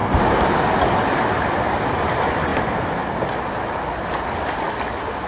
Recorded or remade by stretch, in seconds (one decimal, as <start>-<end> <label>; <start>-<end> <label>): 0.0-0.6 remade; 0.6-5.3 recorded

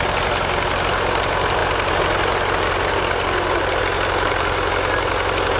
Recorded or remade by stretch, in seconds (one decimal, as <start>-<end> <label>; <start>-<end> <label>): 0.0-5.6 recorded

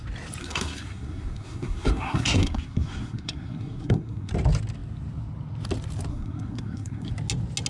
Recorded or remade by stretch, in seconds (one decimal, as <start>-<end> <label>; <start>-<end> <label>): 0.0-0.4 recorded; 0.4-4.3 remade; 4.3-6.1 recorded; 6.1-7.1 remade; 7.1-7.7 recorded

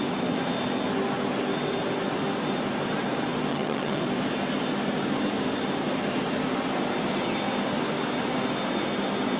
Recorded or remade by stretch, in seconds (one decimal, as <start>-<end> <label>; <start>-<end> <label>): 0.0-3.5 recorded; 3.5-4.0 remade; 4.0-9.4 recorded